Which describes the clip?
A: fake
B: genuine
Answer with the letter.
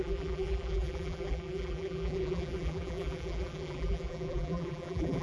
A